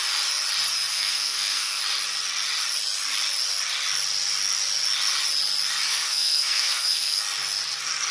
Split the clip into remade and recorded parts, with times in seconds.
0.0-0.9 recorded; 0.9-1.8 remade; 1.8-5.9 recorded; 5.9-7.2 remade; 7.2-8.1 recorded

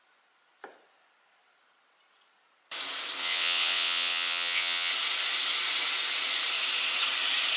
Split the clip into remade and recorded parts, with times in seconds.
0.0-3.2 recorded; 3.2-4.9 remade; 4.9-7.6 recorded